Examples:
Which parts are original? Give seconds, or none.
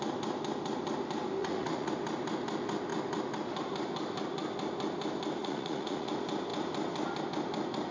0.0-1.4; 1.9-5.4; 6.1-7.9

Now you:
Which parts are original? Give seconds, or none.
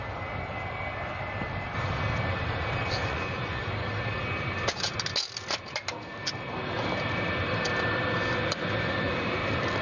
0.0-3.0; 3.6-9.8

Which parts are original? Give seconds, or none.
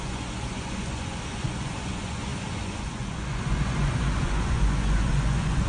none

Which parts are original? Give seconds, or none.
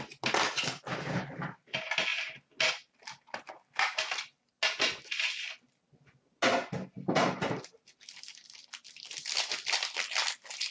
0.0-10.7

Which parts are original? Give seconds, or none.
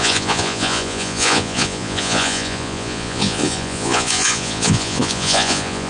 none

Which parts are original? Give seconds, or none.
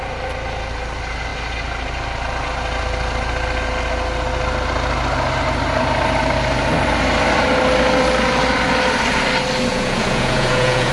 0.0-9.7